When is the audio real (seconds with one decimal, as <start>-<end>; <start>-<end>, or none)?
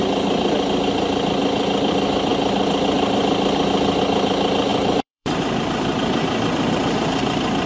0.0-4.7; 6.7-7.7